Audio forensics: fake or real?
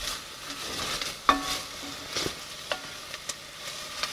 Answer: fake